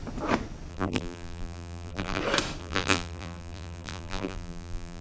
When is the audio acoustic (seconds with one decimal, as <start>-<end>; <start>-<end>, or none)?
0.0-0.7; 2.2-2.6